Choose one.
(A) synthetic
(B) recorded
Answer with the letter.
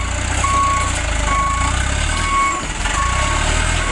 B